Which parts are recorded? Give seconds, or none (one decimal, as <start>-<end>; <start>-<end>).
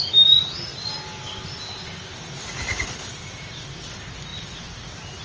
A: 0.0-5.2